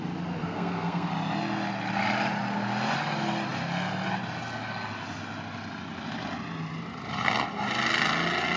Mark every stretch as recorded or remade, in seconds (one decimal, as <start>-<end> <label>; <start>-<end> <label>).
0.0-0.4 recorded; 0.4-1.1 remade; 1.1-8.6 recorded